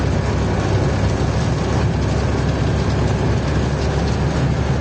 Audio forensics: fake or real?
real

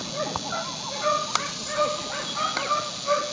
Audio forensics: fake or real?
real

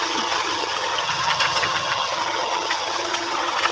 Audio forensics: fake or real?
fake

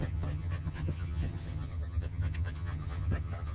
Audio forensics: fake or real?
fake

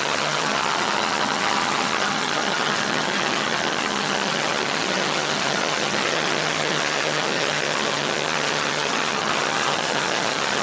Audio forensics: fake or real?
fake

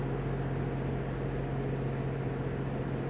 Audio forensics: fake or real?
real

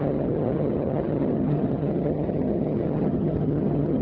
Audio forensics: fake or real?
fake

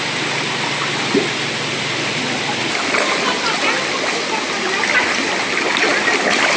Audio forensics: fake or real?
real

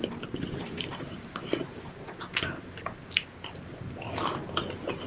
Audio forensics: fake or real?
real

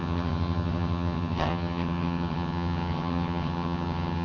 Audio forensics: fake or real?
fake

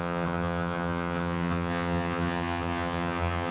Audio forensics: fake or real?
fake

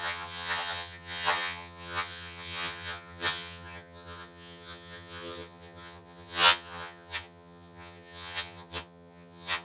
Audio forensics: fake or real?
fake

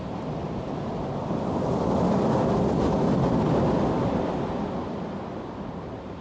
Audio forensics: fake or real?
real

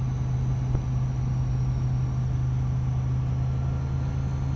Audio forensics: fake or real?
real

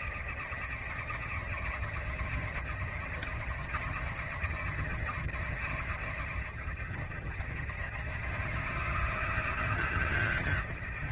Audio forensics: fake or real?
fake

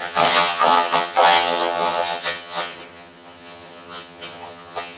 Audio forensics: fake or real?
fake